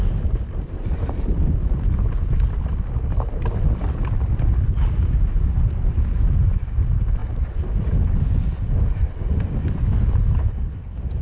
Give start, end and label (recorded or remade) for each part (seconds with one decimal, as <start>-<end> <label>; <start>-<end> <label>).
0.0-11.2 recorded